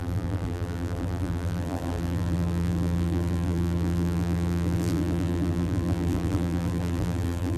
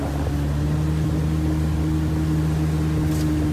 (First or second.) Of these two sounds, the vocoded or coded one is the first